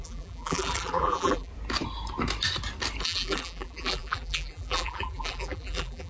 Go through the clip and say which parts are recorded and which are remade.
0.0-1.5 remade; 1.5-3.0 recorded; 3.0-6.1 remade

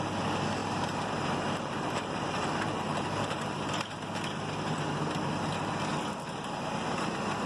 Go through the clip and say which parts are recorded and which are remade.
0.0-0.6 recorded; 0.6-4.8 remade; 4.8-7.5 recorded

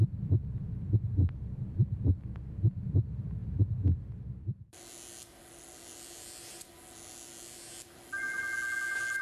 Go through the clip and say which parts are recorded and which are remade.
0.0-9.2 recorded

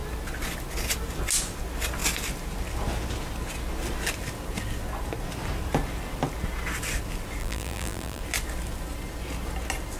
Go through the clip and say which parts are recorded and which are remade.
0.0-7.4 recorded; 7.4-8.2 remade; 8.2-10.0 recorded

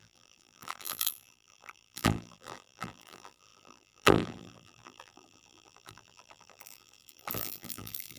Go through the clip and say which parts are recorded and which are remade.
0.0-8.2 remade